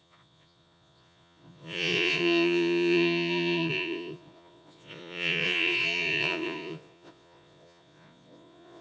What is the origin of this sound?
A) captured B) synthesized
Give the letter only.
B